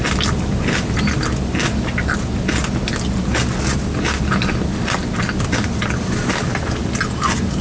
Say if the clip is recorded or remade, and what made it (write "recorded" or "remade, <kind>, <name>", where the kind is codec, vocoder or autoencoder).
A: recorded